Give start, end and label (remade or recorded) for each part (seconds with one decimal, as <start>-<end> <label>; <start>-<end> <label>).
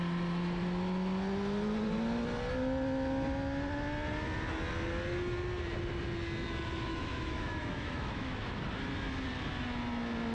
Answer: 0.0-6.9 recorded; 6.9-8.6 remade; 8.6-10.3 recorded